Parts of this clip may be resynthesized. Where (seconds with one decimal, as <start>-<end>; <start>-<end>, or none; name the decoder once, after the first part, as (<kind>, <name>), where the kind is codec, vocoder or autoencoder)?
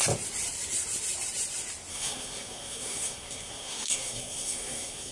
1.9-5.1 (codec, SNAC)